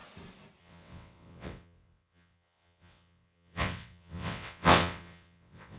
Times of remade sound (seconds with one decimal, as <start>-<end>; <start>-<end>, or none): 0.6-5.8